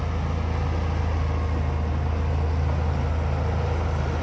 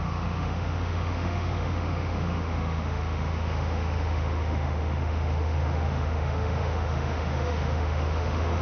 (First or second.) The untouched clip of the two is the first